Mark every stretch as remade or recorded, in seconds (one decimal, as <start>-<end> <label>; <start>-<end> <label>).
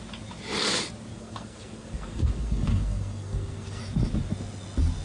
0.0-1.1 recorded; 1.1-3.8 remade; 3.8-5.0 recorded